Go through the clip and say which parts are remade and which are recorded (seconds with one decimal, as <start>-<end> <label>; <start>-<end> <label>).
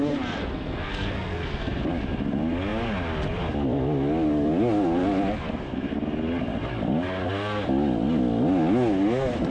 0.0-0.4 recorded; 0.4-1.8 remade; 1.8-9.5 recorded